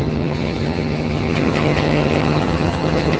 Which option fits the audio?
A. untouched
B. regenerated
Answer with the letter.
B